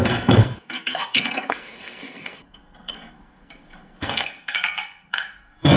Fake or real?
fake